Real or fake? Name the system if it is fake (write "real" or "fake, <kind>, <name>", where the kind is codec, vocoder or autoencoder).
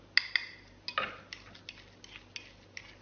real